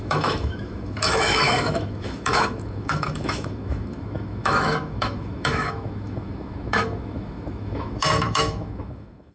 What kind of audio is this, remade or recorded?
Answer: remade